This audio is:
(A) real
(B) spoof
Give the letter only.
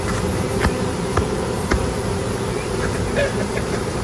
B